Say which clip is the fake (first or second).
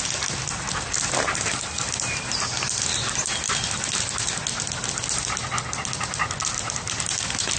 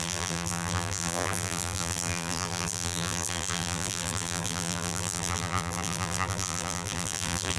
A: second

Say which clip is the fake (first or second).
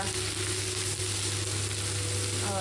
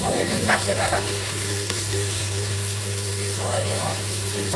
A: second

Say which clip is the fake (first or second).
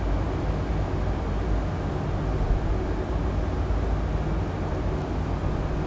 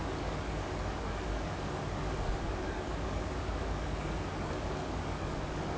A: second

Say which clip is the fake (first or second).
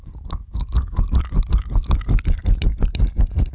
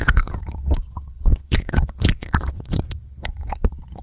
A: second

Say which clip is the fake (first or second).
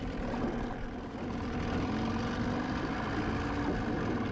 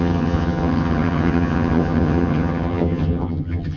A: second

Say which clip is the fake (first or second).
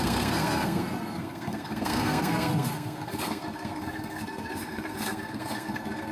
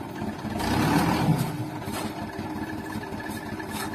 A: first